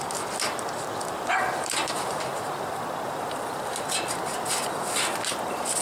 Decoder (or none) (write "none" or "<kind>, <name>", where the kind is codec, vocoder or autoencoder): none